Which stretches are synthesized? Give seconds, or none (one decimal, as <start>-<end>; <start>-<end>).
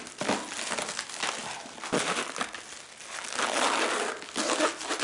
none